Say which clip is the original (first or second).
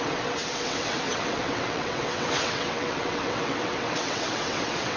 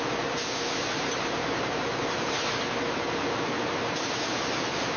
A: second